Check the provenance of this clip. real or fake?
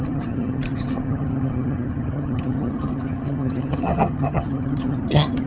fake